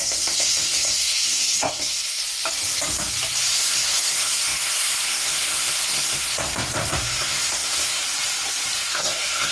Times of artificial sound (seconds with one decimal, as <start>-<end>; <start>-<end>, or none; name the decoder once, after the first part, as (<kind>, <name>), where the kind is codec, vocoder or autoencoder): 0.0-2.2 (codec, SNAC); 3.5-8.0; 8.8-9.5